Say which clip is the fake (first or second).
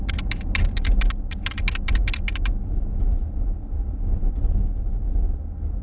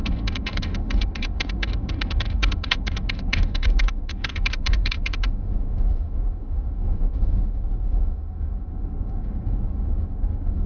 second